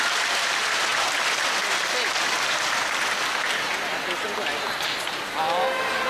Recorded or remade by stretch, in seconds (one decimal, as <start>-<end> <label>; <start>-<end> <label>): 0.0-6.1 recorded